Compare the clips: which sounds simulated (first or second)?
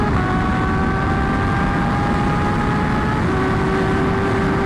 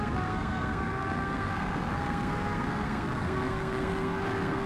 second